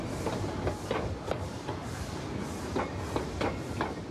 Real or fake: real